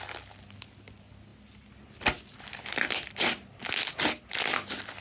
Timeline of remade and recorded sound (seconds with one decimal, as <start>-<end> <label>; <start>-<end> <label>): 0.0-5.0 recorded